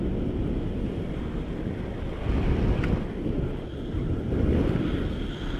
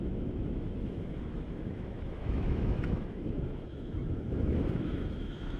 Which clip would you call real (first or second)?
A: first